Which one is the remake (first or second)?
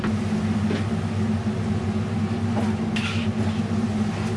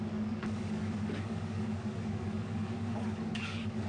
second